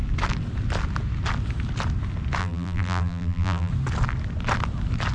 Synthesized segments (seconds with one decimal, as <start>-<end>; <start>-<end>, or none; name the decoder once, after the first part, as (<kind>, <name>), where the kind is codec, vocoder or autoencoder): 2.4-3.7 (vocoder, BigVGAN v2)